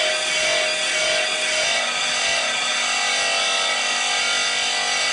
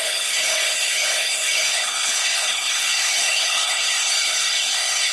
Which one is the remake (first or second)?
second